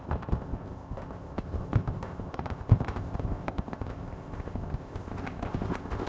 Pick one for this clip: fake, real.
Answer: fake